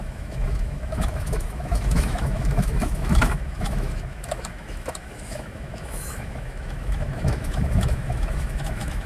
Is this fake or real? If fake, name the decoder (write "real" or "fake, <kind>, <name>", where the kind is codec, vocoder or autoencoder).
fake, autoencoder, DAC-VAE